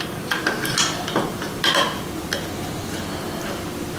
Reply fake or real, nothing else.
real